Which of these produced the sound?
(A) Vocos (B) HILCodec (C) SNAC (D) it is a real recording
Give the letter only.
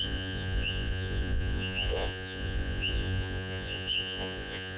A